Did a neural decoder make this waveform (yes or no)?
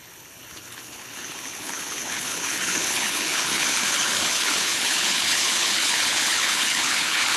yes